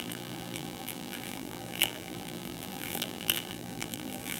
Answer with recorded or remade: remade